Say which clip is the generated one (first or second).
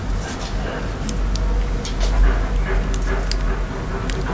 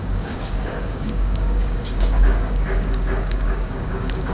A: second